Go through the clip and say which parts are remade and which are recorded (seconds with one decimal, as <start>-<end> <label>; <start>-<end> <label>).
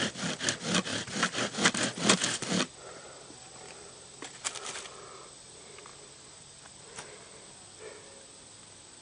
0.0-0.9 recorded; 0.9-1.5 remade; 1.5-5.9 recorded; 5.9-7.3 remade; 7.3-9.0 recorded